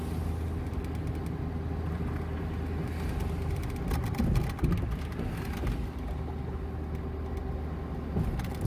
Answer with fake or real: real